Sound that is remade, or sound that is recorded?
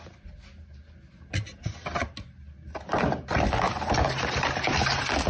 recorded